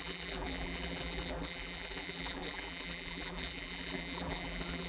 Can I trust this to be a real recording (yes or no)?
no